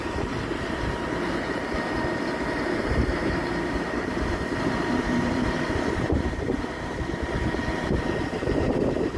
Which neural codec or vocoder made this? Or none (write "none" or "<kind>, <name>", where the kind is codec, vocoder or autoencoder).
vocoder, BigVGAN v2